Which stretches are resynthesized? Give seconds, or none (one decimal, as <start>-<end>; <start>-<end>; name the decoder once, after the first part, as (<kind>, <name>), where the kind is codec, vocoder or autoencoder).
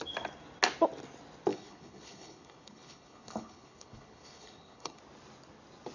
1.5-5.0 (codec, HILCodec)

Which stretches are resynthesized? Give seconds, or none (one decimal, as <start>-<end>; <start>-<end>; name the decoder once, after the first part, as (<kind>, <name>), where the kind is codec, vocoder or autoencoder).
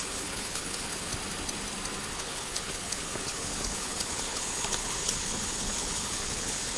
0.0-1.1 (codec, HILCodec); 2.1-6.8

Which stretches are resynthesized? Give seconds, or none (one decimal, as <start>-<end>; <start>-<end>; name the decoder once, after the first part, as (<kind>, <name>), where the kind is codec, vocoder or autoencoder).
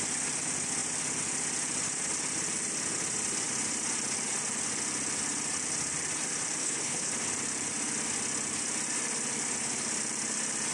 6.6-7.1 (codec, HILCodec)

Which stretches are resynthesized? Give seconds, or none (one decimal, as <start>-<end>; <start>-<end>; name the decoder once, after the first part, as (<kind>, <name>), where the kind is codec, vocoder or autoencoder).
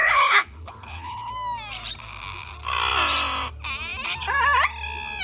0.0-1.3 (codec, HILCodec)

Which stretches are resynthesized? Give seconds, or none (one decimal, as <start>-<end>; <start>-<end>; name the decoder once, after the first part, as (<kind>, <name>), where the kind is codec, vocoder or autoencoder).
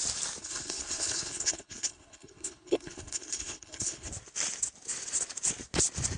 0.4-4.1 (codec, HILCodec)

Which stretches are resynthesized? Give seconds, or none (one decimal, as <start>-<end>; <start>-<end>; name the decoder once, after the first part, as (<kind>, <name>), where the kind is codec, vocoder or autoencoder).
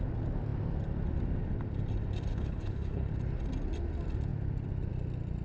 2.3-3.1 (codec, HILCodec)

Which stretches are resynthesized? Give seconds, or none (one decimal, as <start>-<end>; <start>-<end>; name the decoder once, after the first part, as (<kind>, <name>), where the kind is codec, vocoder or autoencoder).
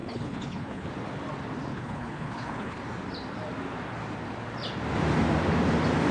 0.0-0.9 (codec, HILCodec); 1.7-2.8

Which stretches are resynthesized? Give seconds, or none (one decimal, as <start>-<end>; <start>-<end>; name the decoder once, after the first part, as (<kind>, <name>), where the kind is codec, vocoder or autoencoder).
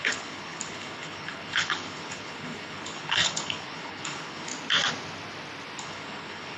0.0-4.5 (codec, HILCodec); 5.8-6.6